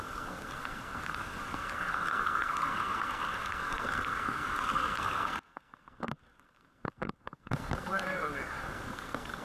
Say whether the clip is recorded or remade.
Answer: remade